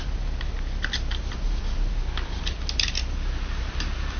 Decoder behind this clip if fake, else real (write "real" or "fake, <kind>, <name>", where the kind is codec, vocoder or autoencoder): real